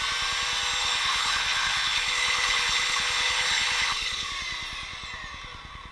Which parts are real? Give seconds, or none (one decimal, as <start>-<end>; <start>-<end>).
0.0-0.8; 4.3-5.9